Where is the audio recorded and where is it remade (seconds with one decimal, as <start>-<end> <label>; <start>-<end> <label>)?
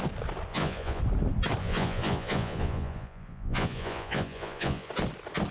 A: 0.0-0.5 recorded; 0.5-1.0 remade; 1.0-1.6 recorded; 1.6-4.9 remade; 4.9-5.5 recorded